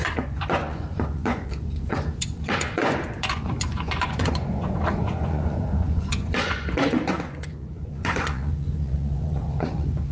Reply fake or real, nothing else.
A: fake